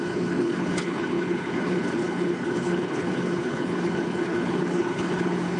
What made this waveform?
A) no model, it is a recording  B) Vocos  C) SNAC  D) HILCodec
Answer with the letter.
D